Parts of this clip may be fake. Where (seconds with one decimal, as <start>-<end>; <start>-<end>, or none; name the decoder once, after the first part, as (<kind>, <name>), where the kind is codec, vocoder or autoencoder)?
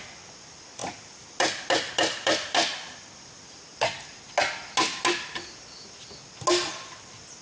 0.8-3.2 (vocoder, BigVGAN v2)